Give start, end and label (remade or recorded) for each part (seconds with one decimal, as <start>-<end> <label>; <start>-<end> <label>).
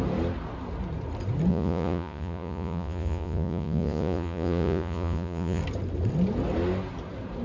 0.0-1.5 recorded; 1.5-5.6 remade; 5.6-7.4 recorded